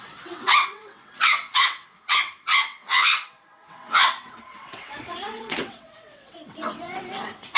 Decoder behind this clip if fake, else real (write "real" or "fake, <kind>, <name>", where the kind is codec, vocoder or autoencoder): fake, vocoder, WaveNeXt